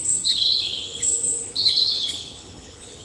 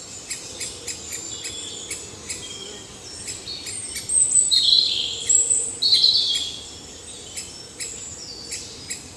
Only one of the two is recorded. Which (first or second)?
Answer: second